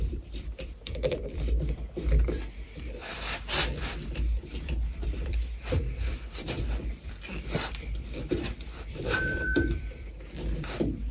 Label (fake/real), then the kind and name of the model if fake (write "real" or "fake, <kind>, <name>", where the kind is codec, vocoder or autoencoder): fake, vocoder, BigVGAN v2